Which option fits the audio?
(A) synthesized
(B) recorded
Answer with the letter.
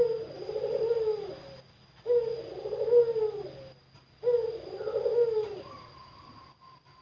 B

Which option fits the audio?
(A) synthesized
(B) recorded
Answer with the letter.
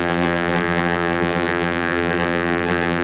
A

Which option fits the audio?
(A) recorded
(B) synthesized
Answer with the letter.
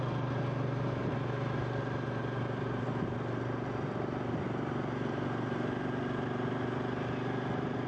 A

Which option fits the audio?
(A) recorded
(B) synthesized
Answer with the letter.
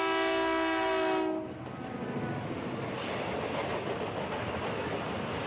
A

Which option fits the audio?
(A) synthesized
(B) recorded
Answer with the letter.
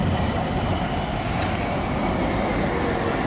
A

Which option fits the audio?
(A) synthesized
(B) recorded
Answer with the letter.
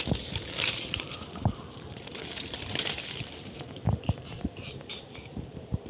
A